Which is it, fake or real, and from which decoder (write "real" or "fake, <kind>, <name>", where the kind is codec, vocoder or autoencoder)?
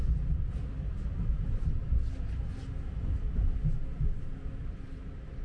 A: real